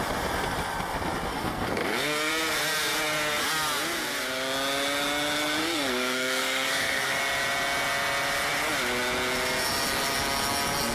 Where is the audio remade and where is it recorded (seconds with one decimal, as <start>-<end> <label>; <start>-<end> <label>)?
0.0-1.3 recorded; 1.3-2.3 remade; 2.3-5.6 recorded; 5.6-7.2 remade; 7.2-10.9 recorded